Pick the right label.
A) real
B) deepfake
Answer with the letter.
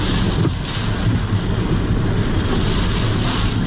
A